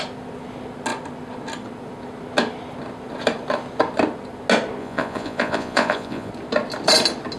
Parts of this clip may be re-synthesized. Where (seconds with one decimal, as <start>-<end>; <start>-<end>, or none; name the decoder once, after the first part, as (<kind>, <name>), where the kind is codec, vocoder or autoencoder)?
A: 4.8-6.3 (vocoder, Vocos)

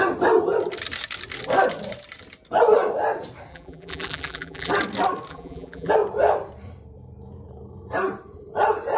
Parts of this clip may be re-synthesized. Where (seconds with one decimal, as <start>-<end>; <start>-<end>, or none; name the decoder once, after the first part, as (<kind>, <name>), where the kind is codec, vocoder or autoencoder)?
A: 3.5-4.7 (vocoder, BigVGAN v2); 5.3-5.9

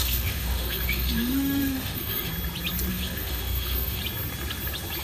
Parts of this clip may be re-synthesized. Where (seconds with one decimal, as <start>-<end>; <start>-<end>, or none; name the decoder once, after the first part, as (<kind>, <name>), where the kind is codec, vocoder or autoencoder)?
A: 0.0-2.3 (autoencoder, DAC-VAE); 2.9-4.0

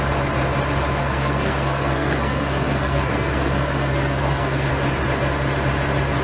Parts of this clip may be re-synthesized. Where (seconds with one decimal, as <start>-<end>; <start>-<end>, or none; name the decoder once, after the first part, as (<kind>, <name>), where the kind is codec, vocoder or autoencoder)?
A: 1.0-4.7 (codec, SNAC)

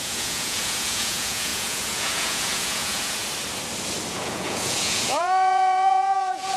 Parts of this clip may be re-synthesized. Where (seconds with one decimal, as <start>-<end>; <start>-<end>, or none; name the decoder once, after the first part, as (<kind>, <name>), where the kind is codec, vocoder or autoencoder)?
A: 0.0-3.2 (vocoder, Vocos); 4.1-6.6

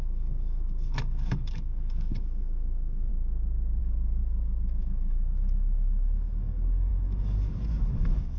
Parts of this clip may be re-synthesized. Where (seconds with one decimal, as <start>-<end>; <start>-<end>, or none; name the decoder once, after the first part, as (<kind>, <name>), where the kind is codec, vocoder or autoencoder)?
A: 0.0-3.1 (codec, DAC); 3.8-8.4

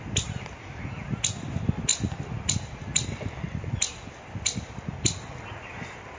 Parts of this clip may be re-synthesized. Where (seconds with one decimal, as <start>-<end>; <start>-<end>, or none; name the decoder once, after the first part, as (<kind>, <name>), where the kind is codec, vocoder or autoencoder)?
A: none

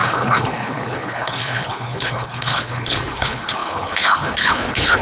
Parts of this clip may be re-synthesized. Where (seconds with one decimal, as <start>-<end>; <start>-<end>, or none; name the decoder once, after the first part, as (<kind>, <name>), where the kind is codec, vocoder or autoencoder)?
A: 0.0-5.0 (codec, HILCodec)